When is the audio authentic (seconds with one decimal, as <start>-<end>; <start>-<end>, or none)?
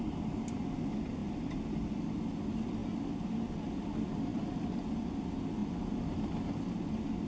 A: 0.0-1.2; 2.0-4.3; 5.0-7.3